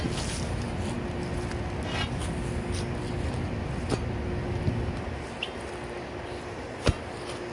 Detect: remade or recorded recorded